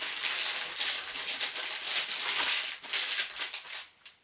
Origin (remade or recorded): recorded